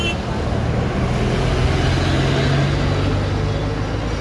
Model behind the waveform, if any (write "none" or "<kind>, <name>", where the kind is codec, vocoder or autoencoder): none